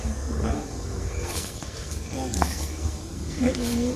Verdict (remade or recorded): remade